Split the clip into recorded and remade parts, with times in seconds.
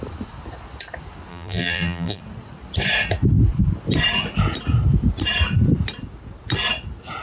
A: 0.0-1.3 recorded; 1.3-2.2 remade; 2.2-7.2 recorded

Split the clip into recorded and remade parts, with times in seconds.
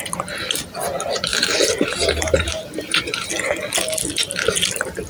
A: 0.0-1.3 recorded; 1.3-3.3 remade; 3.3-5.1 recorded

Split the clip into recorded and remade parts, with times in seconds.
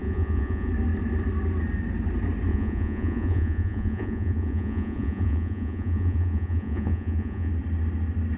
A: 0.0-0.7 remade; 0.7-2.5 recorded; 2.5-7.5 remade; 7.5-8.4 recorded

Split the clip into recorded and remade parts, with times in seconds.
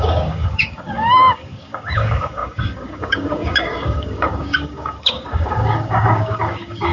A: 0.0-6.9 remade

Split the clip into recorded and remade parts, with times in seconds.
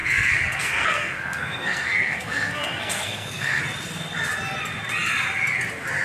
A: 0.0-3.6 remade; 3.6-6.0 recorded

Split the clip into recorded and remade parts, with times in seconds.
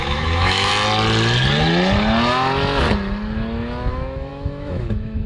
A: 0.0-0.7 remade; 0.7-3.9 recorded; 3.9-5.3 remade